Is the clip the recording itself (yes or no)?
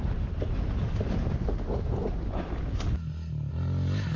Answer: yes